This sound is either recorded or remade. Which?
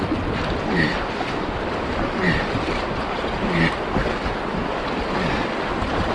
recorded